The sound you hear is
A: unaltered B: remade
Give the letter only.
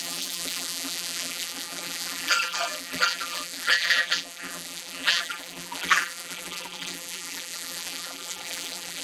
B